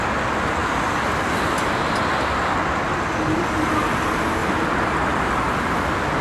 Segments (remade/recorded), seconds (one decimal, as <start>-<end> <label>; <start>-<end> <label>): 0.0-4.4 recorded; 4.4-5.3 remade; 5.3-6.2 recorded